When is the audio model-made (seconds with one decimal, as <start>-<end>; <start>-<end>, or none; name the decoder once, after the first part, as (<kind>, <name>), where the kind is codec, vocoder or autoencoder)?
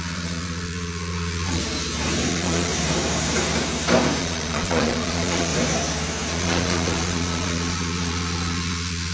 0.0-1.6 (vocoder, Vocos); 2.3-2.7; 4.2-5.5; 6.3-9.1